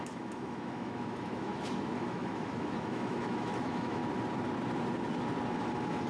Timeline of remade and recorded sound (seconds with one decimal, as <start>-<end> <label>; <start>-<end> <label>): 0.0-4.0 remade; 4.0-5.5 recorded; 5.5-6.1 remade